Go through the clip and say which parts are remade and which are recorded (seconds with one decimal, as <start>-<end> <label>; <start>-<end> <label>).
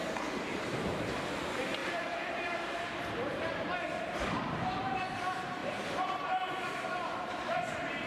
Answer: 0.0-0.5 recorded; 0.5-1.1 remade; 1.1-1.8 recorded; 1.8-5.0 remade; 5.0-5.6 recorded; 5.6-7.3 remade; 7.3-8.1 recorded